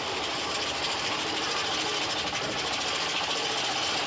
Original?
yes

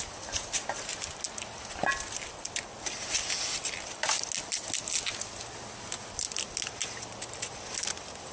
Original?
yes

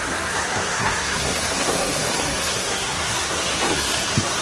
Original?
no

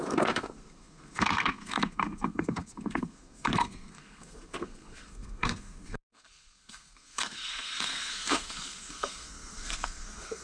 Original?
no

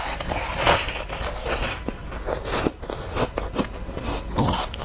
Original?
yes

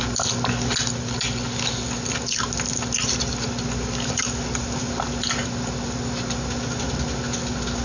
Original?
yes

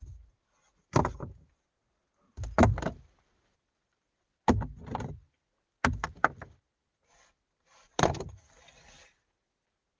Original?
yes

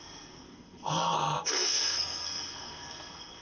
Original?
no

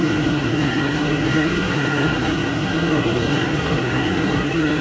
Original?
no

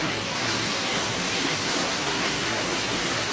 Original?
no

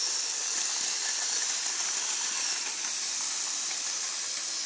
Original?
yes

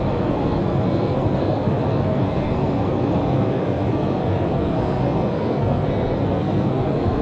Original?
no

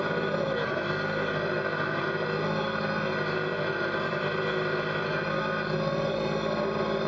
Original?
yes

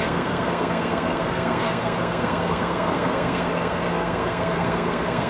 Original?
no